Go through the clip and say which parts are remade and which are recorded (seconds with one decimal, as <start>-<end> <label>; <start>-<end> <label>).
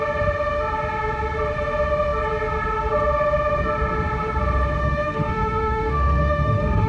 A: 0.0-4.8 recorded; 4.8-6.9 remade